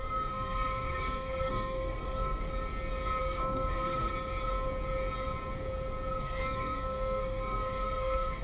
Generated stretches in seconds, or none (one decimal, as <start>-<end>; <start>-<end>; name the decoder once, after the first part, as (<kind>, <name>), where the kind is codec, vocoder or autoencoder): 0.0-2.5 (codec, SNAC); 3.2-4.1; 6.2-8.4